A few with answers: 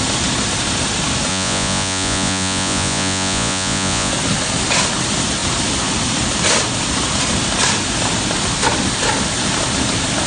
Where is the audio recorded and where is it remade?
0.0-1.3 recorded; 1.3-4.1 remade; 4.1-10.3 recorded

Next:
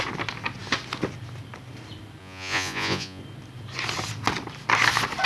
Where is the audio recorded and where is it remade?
0.0-2.2 recorded; 2.2-3.2 remade; 3.2-5.2 recorded

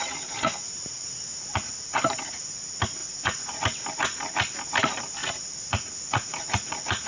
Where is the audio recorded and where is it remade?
0.0-1.3 recorded; 1.3-2.5 remade; 2.5-3.0 recorded; 3.0-3.6 remade; 3.6-5.2 recorded; 5.2-7.1 remade

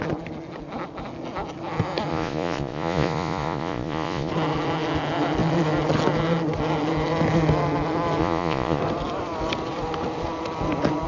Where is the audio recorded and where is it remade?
0.0-2.1 recorded; 2.1-4.3 remade; 4.3-8.2 recorded; 8.2-8.8 remade; 8.8-11.1 recorded

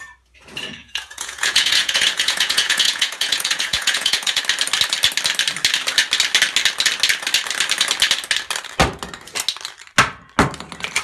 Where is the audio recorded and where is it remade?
0.0-0.8 recorded; 0.8-4.4 remade; 4.4-11.0 recorded

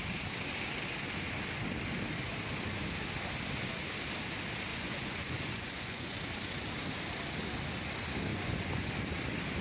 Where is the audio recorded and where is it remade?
0.0-4.7 recorded; 4.7-6.2 remade; 6.2-8.3 recorded; 8.3-8.9 remade; 8.9-9.6 recorded